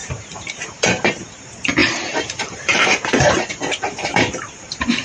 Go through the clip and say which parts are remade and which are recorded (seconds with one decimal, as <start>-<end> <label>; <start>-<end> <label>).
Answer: 0.0-5.0 remade